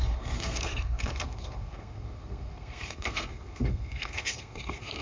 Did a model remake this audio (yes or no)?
yes